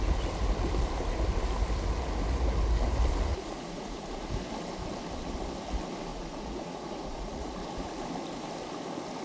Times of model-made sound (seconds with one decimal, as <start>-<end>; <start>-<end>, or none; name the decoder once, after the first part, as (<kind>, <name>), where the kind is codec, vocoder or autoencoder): 3.3-4.3 (vocoder, Vocos); 6.1-7.6